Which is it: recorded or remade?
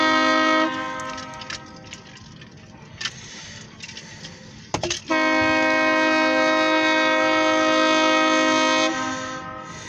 recorded